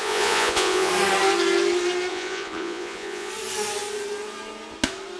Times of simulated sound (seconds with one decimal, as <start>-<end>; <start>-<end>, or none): 0.0-0.9; 2.1-3.3